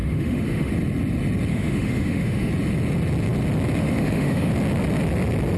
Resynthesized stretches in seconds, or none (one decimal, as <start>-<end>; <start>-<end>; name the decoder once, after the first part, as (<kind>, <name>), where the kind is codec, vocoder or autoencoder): 0.0-0.7 (autoencoder, DAC-VAE); 1.5-2.5; 3.8-4.5